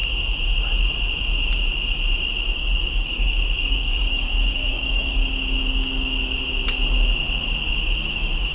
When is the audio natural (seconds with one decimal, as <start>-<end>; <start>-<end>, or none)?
0.0-2.8; 5.2-7.7